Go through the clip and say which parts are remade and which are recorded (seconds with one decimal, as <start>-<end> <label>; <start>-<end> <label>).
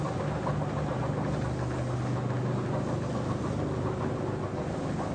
0.0-5.1 recorded